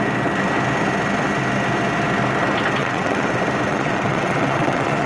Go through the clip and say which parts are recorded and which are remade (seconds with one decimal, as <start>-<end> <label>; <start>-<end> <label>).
0.0-2.8 recorded; 2.8-3.3 remade; 3.3-3.7 recorded; 3.7-5.1 remade